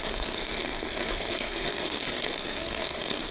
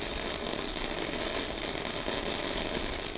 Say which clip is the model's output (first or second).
first